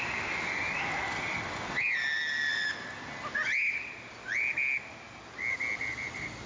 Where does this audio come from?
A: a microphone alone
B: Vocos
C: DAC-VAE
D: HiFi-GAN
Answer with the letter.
A